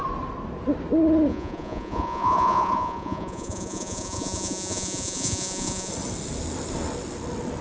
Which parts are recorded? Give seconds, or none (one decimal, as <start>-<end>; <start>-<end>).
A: 0.0-1.3; 5.9-7.6